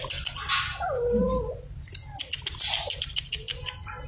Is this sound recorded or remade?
recorded